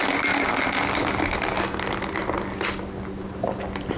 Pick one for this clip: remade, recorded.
recorded